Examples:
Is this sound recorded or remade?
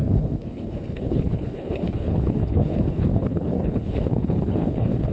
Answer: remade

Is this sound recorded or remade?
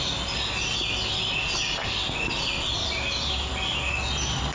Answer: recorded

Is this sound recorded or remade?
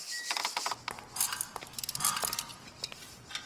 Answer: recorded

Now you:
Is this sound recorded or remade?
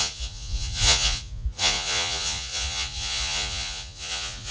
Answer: remade